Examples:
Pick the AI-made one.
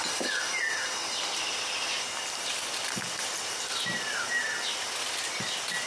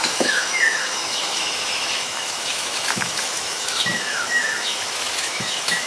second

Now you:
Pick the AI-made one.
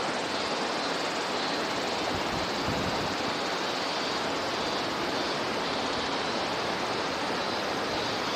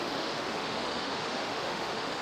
second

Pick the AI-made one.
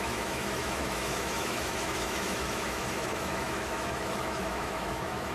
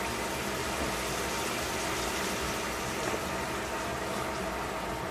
first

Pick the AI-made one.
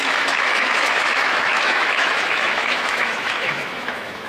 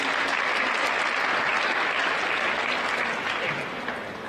first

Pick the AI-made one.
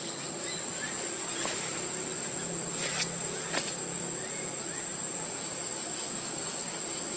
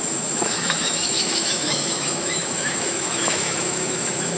second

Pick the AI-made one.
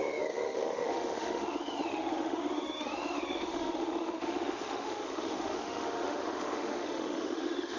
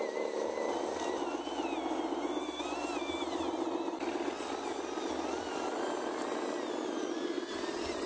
first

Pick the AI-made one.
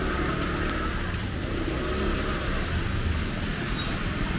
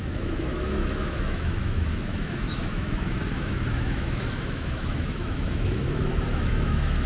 second